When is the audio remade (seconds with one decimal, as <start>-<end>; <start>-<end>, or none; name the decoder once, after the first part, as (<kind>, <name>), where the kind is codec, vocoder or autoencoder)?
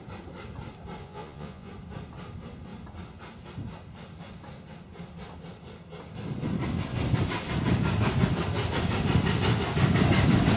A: 1.0-1.7 (vocoder, Vocos)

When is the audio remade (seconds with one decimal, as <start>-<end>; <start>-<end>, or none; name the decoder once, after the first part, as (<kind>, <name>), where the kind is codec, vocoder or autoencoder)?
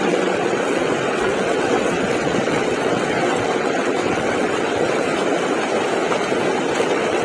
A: 0.0-5.1 (vocoder, WaveNeXt); 6.8-7.2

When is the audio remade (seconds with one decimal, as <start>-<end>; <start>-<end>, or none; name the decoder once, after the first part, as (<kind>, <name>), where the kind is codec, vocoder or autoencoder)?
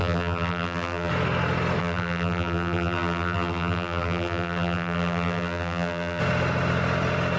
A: 0.0-1.1 (vocoder, BigVGAN v2); 1.8-6.2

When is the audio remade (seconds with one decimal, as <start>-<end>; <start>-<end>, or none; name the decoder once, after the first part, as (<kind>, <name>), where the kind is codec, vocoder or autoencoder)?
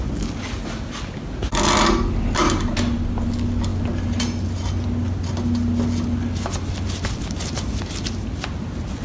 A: none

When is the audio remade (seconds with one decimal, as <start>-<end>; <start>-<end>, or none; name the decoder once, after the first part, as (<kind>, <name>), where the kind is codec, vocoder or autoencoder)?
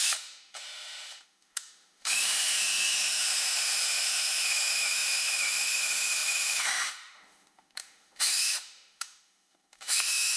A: 0.0-10.4 (autoencoder, DAC-VAE)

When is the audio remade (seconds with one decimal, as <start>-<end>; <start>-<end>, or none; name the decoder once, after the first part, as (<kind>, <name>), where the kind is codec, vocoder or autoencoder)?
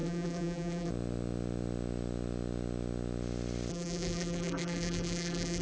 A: 0.0-0.9 (vocoder, BigVGAN v2); 3.7-5.6